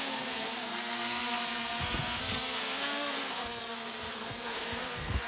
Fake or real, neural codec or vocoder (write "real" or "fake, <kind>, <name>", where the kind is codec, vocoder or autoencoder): fake, codec, SNAC